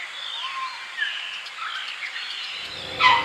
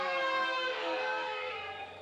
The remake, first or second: second